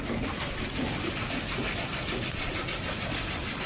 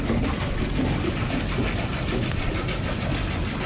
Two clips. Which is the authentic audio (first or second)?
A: second